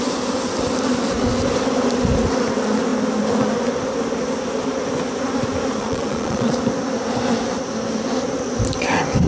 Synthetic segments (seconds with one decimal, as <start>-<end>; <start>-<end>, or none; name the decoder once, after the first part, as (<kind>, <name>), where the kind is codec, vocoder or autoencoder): 5.8-6.6 (vocoder, Vocos)